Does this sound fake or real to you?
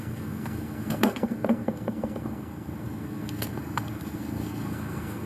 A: fake